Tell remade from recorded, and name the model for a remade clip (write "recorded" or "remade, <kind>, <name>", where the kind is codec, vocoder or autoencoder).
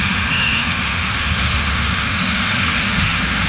remade, autoencoder, DAC-VAE